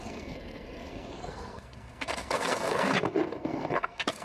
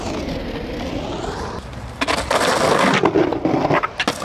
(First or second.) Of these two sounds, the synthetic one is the first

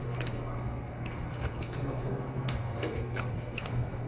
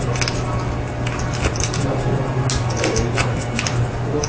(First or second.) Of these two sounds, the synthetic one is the first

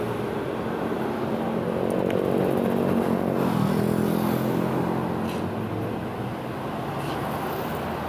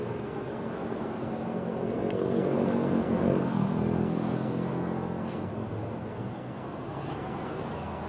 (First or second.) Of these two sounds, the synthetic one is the second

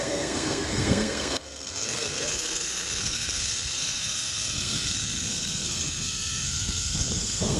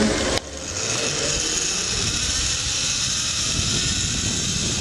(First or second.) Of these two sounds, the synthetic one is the first